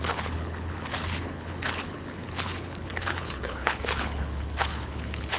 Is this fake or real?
fake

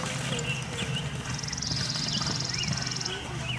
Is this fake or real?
real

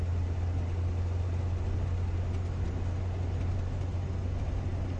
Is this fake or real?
real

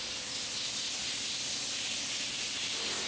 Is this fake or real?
real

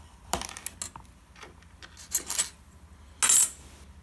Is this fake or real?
real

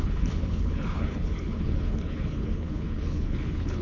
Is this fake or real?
fake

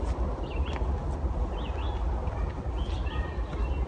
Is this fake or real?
real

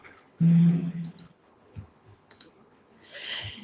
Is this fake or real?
fake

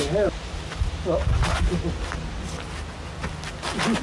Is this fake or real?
real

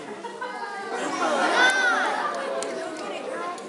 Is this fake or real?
real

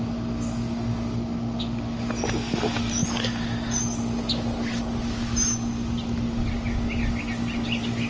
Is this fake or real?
real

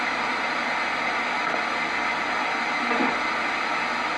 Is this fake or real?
real